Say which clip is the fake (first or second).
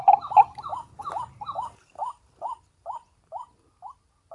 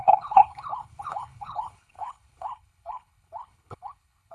second